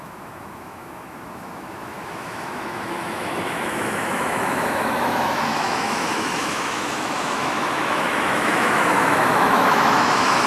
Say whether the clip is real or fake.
fake